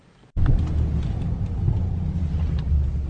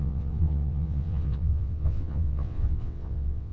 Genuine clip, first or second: first